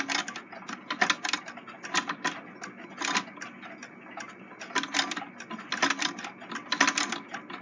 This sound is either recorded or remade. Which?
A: recorded